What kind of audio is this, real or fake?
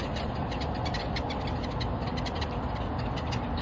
real